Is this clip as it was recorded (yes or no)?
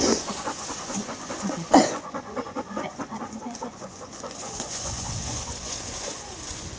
no